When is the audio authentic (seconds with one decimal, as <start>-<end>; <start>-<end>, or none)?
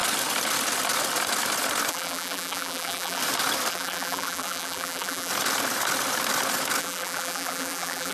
0.0-1.9; 3.2-3.7; 5.3-6.8